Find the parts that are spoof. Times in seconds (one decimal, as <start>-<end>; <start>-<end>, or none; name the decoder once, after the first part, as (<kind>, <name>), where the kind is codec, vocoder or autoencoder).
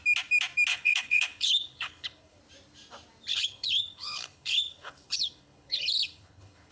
0.7-2.4 (codec, HILCodec); 3.3-6.7